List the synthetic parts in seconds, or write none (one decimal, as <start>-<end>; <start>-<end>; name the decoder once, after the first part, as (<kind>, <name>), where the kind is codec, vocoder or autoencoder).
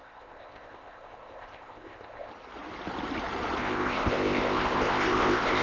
0.0-2.3 (codec, ZipCodec); 3.6-5.6